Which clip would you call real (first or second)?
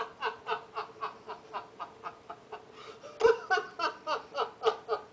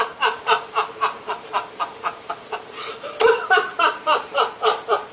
first